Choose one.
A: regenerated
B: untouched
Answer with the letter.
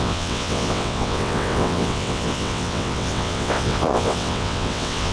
A